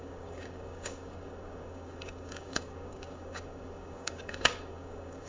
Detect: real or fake fake